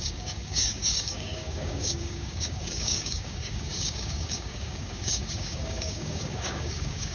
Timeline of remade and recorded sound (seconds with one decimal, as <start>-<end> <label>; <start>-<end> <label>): 0.0-7.1 remade